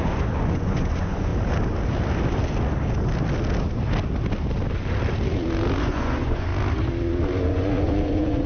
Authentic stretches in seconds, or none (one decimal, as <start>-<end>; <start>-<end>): 1.3-5.8; 6.5-7.2